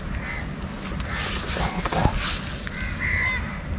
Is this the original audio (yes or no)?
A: yes